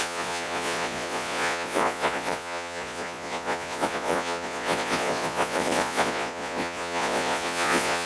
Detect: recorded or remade remade